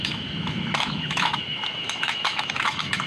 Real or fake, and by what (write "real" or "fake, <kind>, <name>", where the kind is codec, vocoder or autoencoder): fake, autoencoder, DAC-VAE